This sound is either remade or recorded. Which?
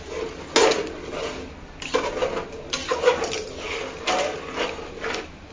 recorded